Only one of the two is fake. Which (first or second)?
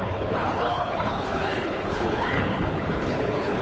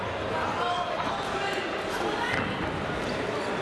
first